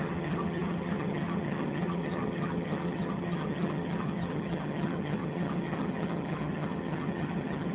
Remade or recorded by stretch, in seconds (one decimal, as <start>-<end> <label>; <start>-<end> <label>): 0.0-7.7 remade